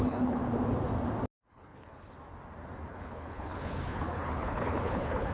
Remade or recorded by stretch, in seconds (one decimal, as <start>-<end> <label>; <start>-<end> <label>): 0.0-0.4 remade; 0.4-1.5 recorded; 1.5-1.9 remade; 1.9-2.9 recorded; 2.9-5.3 remade